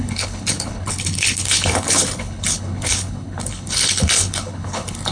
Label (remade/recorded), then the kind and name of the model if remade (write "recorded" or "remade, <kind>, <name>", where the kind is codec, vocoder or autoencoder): remade, codec, HILCodec